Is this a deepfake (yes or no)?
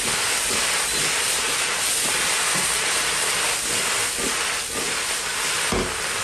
no